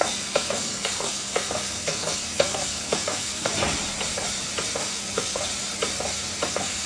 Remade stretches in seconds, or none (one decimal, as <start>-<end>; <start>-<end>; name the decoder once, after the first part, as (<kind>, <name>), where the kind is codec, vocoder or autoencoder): 0.0-3.5 (codec, SNAC); 4.8-5.5; 6.5-6.9

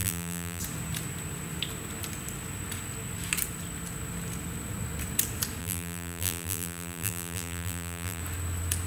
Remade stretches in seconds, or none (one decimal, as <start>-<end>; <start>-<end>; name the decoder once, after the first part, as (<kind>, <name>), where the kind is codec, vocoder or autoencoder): 0.0-0.6 (vocoder, BigVGAN v2); 5.6-8.2

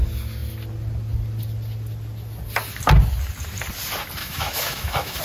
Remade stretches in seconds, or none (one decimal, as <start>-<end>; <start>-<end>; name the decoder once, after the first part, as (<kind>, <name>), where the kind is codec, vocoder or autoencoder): 4.2-5.2 (autoencoder, DAC-VAE)

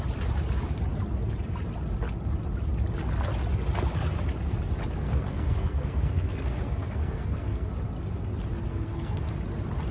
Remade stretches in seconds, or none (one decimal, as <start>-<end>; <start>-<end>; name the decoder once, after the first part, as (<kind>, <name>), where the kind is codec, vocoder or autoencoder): 5.0-7.7 (codec, SNAC); 8.7-9.3

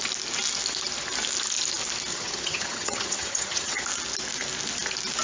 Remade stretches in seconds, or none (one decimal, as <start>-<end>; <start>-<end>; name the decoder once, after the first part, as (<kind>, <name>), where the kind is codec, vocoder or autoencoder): 2.1-3.8 (vocoder, HiFi-GAN)

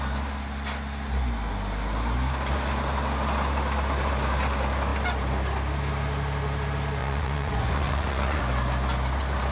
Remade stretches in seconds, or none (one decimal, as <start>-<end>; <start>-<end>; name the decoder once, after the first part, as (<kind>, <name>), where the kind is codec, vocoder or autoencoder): 7.0-8.4 (vocoder, Vocos)

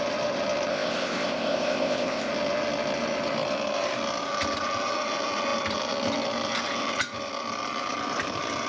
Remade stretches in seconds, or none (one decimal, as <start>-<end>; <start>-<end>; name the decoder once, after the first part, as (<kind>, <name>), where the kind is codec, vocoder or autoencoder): 0.7-2.3 (codec, ZipCodec)